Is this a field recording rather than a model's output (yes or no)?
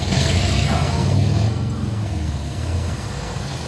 no